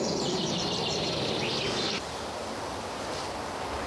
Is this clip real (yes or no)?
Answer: yes